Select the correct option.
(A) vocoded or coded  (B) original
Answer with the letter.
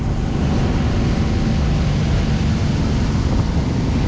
B